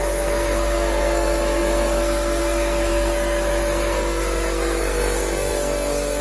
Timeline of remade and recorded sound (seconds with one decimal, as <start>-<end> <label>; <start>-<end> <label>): 0.0-6.2 remade